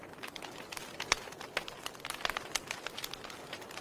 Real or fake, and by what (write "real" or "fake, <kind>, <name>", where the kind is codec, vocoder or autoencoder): real